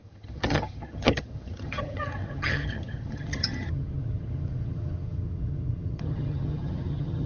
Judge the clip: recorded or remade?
remade